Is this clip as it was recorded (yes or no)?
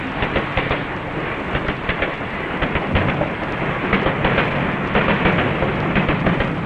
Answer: yes